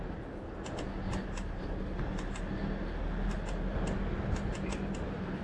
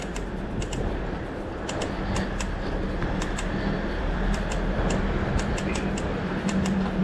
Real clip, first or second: first